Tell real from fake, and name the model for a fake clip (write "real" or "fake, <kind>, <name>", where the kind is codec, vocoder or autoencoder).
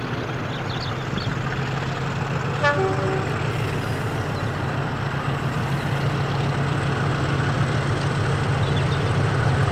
real